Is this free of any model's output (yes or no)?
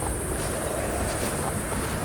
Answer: yes